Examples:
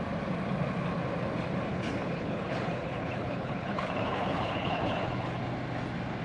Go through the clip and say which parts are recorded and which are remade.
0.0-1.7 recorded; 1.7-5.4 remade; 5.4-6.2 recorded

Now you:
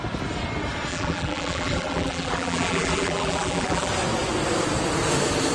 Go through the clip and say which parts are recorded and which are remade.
0.0-0.9 recorded; 0.9-3.9 remade; 3.9-5.5 recorded

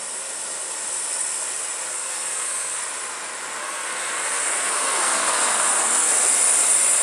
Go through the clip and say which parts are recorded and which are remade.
0.0-1.9 recorded; 1.9-2.8 remade; 2.8-3.6 recorded; 3.6-6.1 remade; 6.1-7.0 recorded

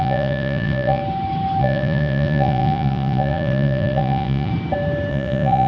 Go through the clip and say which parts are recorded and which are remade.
0.0-1.0 remade; 1.0-1.6 recorded; 1.6-4.5 remade; 4.5-5.1 recorded; 5.1-5.7 remade

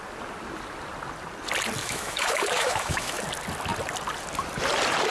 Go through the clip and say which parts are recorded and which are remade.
0.0-1.8 recorded; 1.8-3.2 remade; 3.2-5.1 recorded

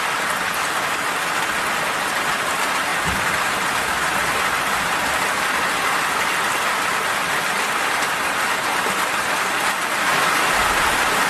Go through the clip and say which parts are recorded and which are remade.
0.0-2.9 recorded; 2.9-5.2 remade; 5.2-11.3 recorded

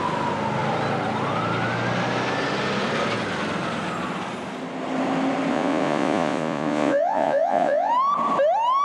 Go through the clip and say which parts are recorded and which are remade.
0.0-5.5 recorded; 5.5-7.9 remade; 7.9-8.8 recorded

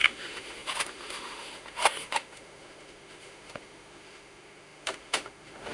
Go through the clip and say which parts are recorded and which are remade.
0.0-5.7 remade